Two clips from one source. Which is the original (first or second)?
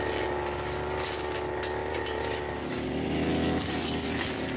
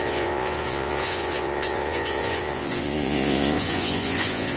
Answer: first